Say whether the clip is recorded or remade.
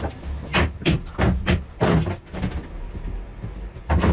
recorded